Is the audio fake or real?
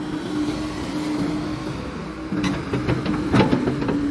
real